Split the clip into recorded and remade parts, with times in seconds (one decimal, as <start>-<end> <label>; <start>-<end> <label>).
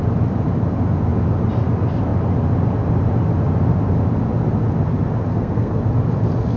0.0-5.3 recorded; 5.3-5.8 remade; 5.8-6.6 recorded